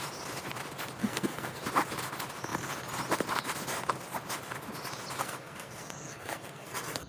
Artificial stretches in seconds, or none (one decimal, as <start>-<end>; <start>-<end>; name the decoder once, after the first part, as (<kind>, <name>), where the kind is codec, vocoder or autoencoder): 1.0-1.6 (codec, SNAC); 5.2-7.1